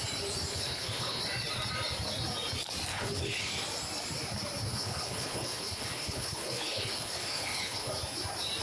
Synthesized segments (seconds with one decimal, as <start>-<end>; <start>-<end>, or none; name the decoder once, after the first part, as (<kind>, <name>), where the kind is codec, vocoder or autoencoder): 0.5-1.2 (codec, HILCodec); 2.9-3.5; 4.7-7.9